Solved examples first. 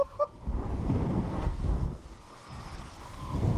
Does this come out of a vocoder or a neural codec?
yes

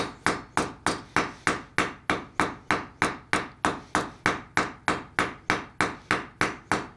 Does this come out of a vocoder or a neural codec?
no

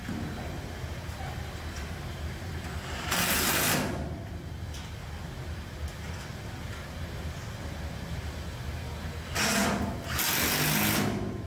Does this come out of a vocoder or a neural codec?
no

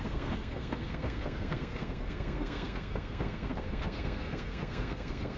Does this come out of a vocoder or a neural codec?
yes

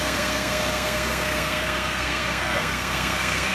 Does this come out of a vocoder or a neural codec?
yes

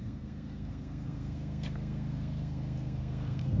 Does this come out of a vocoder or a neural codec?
yes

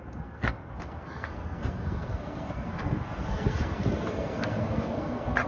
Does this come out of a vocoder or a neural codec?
yes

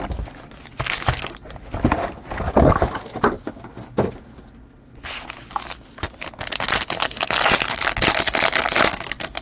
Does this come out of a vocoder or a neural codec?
no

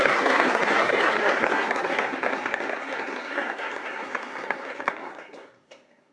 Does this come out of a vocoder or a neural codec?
yes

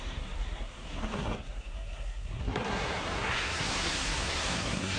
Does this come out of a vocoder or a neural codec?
yes